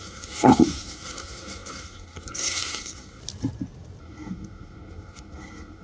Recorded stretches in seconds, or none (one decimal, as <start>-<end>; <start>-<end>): 3.2-4.0